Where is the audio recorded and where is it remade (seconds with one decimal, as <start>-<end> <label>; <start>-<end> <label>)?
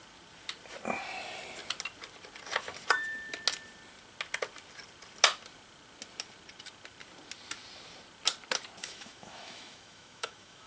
0.0-8.8 recorded; 8.8-10.7 remade